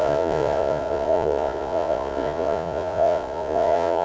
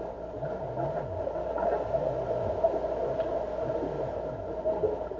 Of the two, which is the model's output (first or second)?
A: first